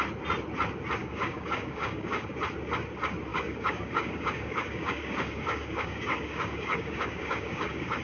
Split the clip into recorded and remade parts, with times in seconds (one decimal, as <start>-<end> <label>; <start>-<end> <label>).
0.0-1.0 recorded; 1.0-2.3 remade; 2.3-3.3 recorded; 3.3-8.0 remade